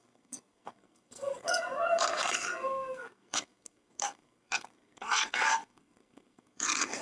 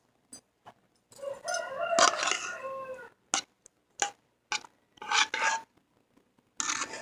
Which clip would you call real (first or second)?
second